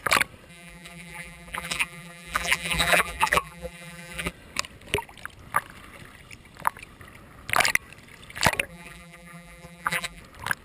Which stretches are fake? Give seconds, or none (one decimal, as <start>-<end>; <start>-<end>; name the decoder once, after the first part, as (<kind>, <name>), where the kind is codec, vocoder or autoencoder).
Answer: 0.5-4.3 (vocoder, BigVGAN v2); 8.7-10.2